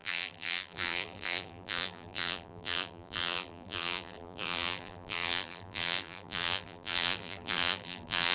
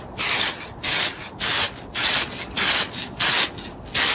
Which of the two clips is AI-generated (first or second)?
first